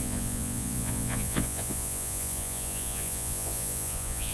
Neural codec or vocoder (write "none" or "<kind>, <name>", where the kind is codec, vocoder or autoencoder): vocoder, Vocos